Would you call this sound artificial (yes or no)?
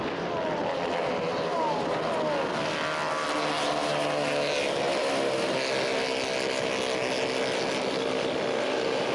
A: no